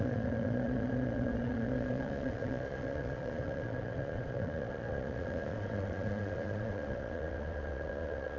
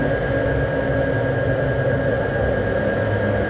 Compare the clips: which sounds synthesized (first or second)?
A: first